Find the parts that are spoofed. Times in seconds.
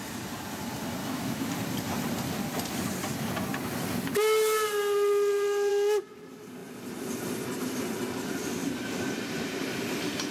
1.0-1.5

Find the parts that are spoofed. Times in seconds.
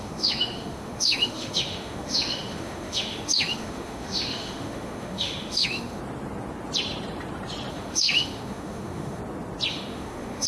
0.0-6.0; 7.7-9.2; 9.7-10.5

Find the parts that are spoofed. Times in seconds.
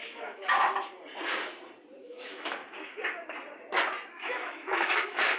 0.0-0.6; 2.0-2.6; 4.1-5.4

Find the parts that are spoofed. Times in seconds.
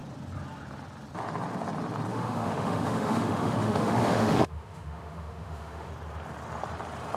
2.1-5.9